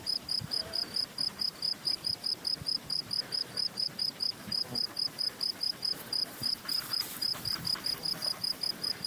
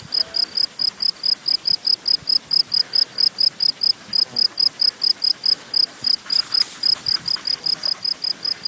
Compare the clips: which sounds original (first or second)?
second